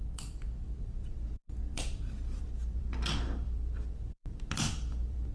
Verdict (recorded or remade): remade